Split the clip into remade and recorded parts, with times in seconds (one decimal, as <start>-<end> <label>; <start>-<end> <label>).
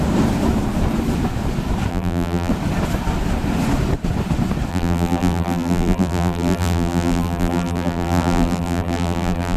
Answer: 0.0-1.9 recorded; 1.9-2.5 remade; 2.5-4.7 recorded; 4.7-9.6 remade